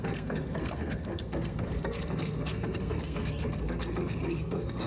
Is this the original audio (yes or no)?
no